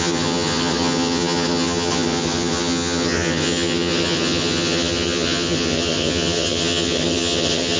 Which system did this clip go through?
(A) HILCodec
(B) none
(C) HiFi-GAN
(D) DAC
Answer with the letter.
C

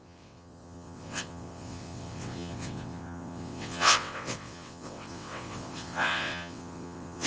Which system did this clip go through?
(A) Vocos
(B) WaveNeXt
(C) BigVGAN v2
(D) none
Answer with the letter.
B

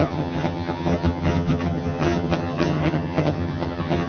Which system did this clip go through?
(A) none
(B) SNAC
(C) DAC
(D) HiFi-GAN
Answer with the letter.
D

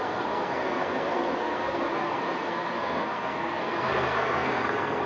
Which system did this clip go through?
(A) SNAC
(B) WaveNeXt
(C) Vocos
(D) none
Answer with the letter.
A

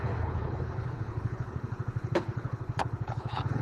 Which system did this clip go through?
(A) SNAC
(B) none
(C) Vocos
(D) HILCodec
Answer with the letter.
D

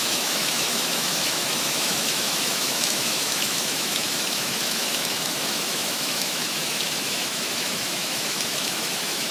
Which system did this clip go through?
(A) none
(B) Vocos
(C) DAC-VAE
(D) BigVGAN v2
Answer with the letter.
C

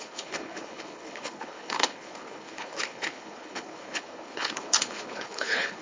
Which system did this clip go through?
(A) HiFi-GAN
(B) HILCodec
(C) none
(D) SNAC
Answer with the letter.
B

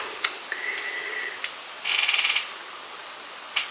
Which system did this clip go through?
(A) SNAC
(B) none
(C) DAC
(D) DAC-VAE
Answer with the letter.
B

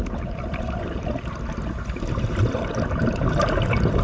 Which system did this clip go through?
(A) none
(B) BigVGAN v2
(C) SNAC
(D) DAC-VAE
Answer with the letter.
A